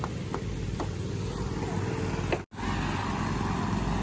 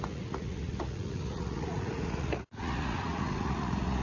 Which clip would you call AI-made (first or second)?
second